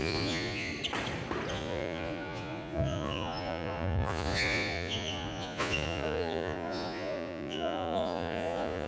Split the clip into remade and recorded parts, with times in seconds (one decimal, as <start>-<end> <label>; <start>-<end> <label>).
0.0-0.7 remade; 0.7-1.5 recorded; 1.5-8.9 remade